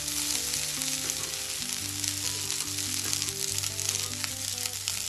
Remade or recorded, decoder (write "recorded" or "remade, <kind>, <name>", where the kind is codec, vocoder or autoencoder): recorded